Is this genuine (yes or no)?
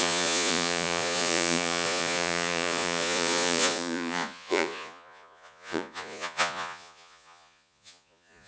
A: no